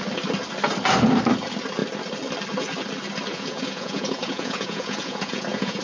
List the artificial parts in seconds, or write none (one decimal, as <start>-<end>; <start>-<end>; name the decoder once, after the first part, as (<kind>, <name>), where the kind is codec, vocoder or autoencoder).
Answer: 3.3-5.8 (vocoder, Vocos)